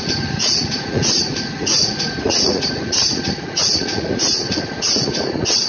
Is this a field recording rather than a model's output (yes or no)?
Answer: no